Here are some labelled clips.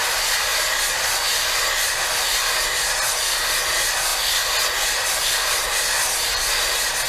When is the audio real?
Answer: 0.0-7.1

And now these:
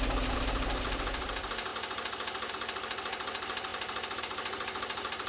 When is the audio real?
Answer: 1.7-2.5

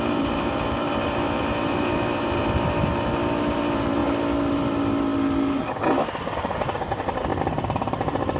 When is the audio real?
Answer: 4.0-6.4

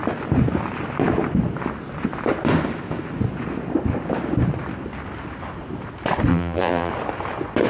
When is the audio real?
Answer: 0.0-6.3; 6.9-7.7

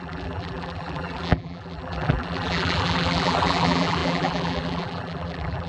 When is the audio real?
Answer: none

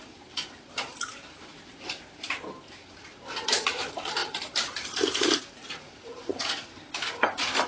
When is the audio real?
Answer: 4.2-5.4; 6.3-7.3

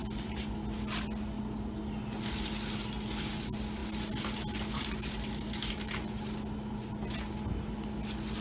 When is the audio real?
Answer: 0.0-8.4

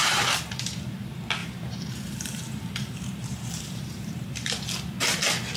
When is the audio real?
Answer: 0.8-1.4; 4.5-5.6